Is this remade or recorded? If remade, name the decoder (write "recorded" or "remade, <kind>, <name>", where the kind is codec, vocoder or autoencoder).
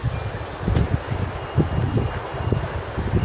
recorded